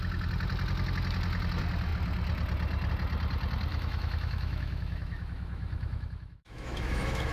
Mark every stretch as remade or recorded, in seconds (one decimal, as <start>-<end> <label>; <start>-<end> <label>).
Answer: 0.0-3.7 recorded; 3.7-7.3 remade